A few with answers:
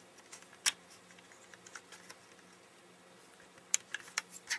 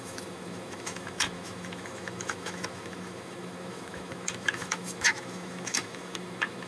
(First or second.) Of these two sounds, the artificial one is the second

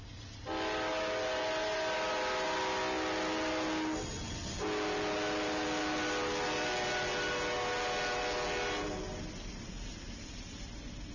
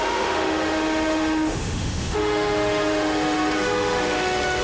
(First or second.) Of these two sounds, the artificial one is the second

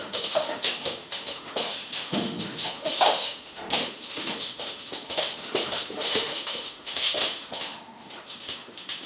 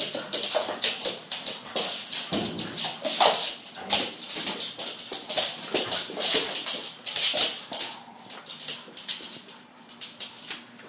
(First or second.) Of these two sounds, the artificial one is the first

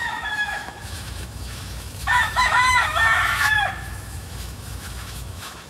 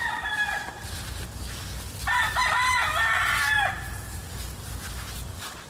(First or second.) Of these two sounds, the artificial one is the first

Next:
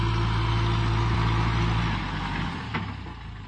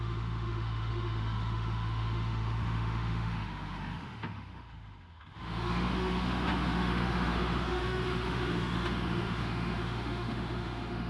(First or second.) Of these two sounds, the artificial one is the second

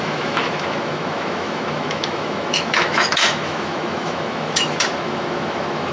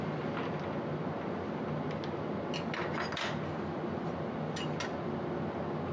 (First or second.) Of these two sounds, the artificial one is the first